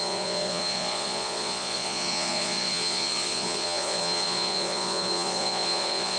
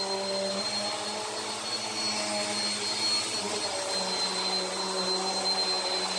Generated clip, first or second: first